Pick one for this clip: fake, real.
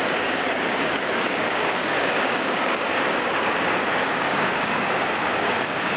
fake